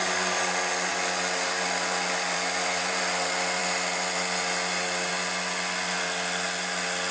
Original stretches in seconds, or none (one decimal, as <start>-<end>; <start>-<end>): 0.0-0.9; 3.0-7.1